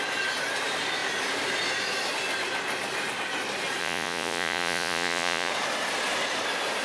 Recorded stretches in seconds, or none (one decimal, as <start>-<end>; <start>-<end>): 0.0-3.8; 5.5-6.8